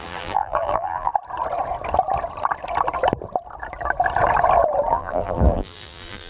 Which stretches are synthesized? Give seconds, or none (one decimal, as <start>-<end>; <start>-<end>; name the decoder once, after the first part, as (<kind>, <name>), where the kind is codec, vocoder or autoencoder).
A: 0.0-1.1 (vocoder, BigVGAN v2); 4.9-6.3